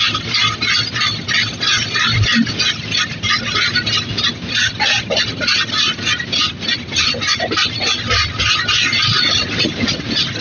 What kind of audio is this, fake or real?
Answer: real